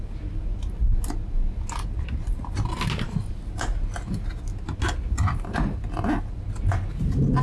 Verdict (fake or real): real